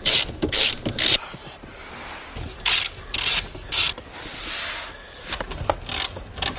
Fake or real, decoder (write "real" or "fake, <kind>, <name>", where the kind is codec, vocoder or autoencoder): real